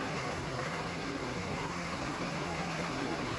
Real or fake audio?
fake